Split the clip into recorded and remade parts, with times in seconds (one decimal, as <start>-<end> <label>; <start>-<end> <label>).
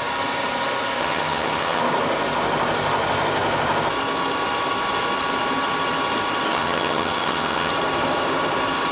0.0-1.0 recorded; 1.0-1.8 remade; 1.8-6.5 recorded; 6.5-7.7 remade; 7.7-8.9 recorded